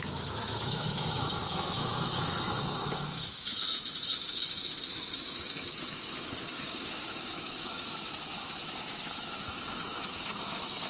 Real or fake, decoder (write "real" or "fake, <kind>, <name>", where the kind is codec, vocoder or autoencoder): fake, autoencoder, DAC-VAE